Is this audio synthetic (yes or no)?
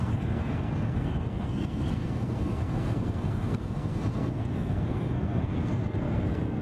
yes